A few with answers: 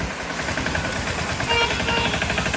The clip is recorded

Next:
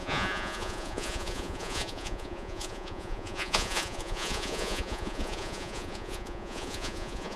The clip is remade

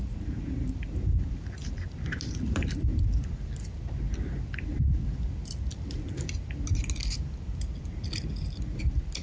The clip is recorded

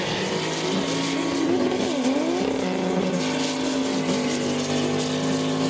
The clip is recorded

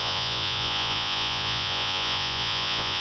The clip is remade